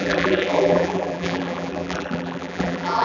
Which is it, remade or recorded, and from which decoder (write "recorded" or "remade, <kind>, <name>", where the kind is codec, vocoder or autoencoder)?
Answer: remade, vocoder, BigVGAN v2